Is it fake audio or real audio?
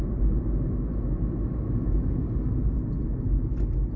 real